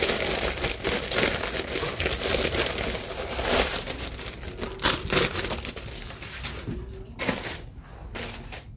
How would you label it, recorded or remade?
recorded